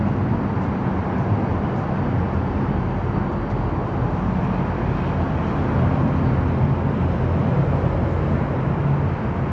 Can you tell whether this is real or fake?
real